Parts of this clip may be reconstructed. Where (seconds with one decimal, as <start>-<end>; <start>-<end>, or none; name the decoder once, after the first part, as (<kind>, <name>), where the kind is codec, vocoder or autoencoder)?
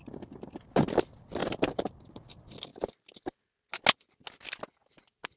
none